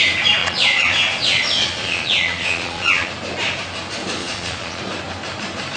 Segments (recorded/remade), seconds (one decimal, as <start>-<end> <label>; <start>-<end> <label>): 0.0-0.4 recorded; 0.4-3.1 remade; 3.1-4.2 recorded; 4.2-4.8 remade; 4.8-5.8 recorded